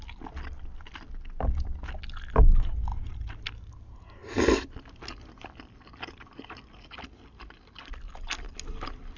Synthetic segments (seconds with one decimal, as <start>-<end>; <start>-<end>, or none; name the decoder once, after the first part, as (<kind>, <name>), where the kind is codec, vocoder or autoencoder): none

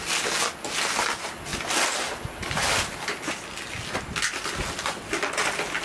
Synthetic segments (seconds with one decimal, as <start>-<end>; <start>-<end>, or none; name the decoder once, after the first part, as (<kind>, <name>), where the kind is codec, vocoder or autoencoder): none

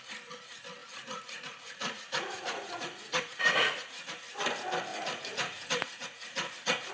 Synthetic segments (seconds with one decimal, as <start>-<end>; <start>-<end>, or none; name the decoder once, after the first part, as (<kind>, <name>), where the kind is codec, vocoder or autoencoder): 0.8-4.1 (vocoder, Vocos); 4.9-6.9